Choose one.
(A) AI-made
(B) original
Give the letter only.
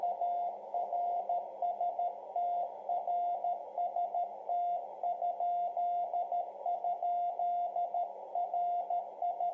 B